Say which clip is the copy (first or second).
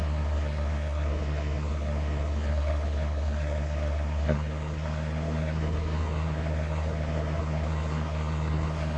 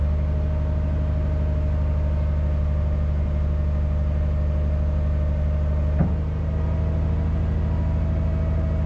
first